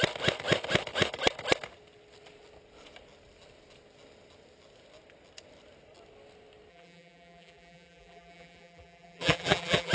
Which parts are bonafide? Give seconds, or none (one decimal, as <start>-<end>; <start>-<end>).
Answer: 0.0-6.7